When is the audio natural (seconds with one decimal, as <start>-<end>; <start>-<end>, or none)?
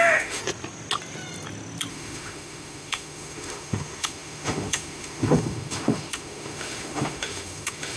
0.4-1.9